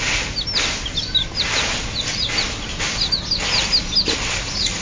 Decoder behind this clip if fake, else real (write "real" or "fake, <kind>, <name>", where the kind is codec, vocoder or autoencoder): real